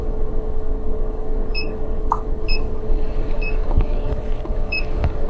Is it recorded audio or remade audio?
remade